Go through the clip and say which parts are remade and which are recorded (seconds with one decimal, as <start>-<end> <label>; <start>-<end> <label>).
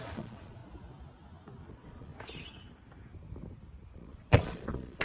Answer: 0.0-0.6 remade; 0.6-1.7 recorded; 1.7-2.1 remade; 2.1-3.9 recorded; 3.9-5.0 remade